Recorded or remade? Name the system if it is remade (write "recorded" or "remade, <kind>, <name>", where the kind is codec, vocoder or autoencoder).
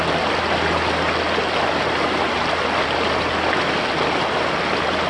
recorded